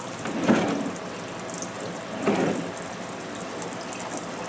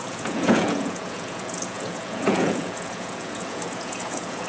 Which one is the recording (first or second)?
first